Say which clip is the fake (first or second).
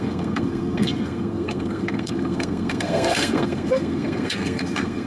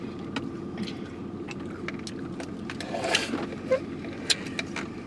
first